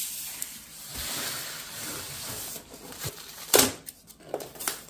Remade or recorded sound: remade